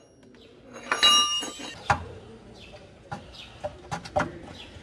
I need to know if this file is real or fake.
real